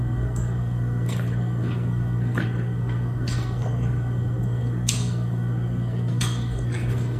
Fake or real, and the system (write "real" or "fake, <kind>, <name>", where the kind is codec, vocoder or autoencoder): fake, codec, SNAC